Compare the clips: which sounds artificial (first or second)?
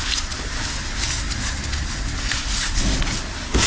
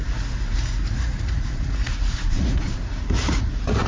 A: second